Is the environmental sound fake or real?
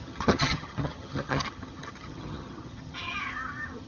fake